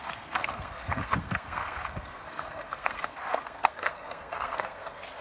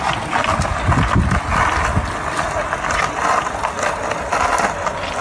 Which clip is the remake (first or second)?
first